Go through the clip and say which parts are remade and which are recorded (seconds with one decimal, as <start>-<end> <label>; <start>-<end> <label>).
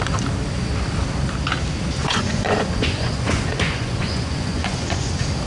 0.0-2.0 recorded; 2.0-5.1 remade; 5.1-5.5 recorded